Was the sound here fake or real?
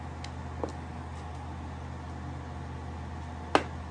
real